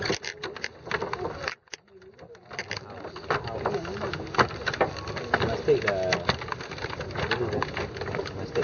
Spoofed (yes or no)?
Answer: no